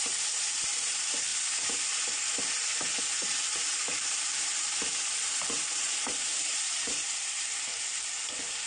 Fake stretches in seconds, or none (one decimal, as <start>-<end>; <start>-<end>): 0.0-1.3; 3.0-8.7